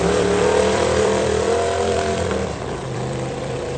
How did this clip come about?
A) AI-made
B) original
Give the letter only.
A